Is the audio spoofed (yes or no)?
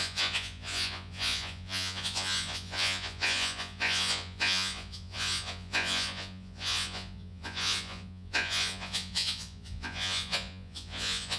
yes